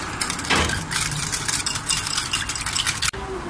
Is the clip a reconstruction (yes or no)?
no